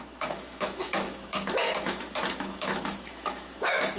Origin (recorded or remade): remade